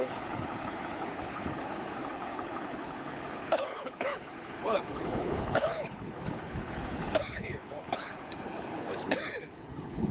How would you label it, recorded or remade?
remade